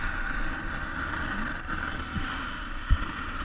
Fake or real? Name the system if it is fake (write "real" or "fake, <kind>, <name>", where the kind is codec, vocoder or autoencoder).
real